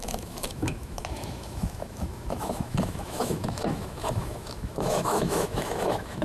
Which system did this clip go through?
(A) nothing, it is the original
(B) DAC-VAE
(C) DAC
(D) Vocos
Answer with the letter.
B